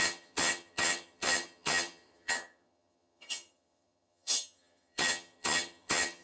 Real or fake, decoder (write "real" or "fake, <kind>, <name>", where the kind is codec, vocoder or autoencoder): fake, vocoder, HiFi-GAN